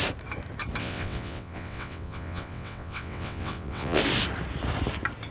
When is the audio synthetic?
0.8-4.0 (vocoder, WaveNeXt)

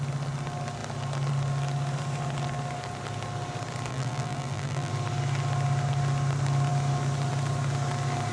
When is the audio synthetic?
3.9-4.9 (vocoder, BigVGAN v2)